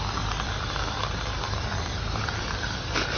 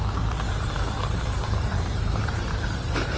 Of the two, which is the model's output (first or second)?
second